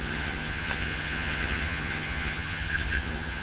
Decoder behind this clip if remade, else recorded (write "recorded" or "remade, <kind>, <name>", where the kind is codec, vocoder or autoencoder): remade, vocoder, HiFi-GAN